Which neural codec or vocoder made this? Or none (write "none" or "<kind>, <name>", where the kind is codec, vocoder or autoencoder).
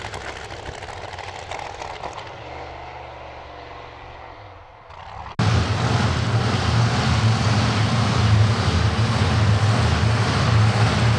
none